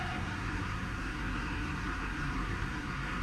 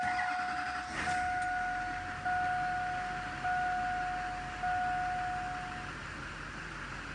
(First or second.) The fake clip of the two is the first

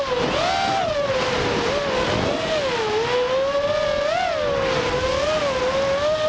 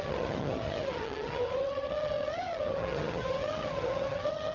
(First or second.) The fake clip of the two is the second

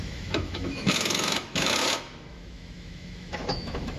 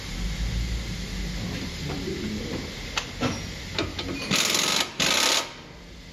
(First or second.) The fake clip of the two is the first